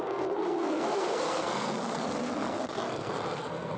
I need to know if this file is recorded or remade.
remade